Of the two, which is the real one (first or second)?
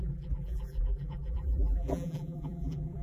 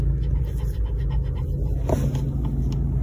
second